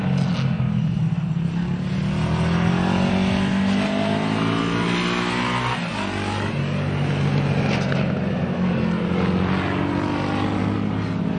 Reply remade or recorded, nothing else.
recorded